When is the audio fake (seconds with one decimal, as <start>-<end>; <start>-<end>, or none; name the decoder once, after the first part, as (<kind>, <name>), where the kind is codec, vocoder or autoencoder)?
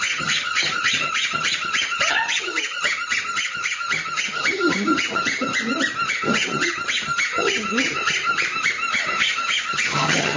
0.0-5.5 (vocoder, HiFi-GAN); 6.1-8.3; 8.9-10.4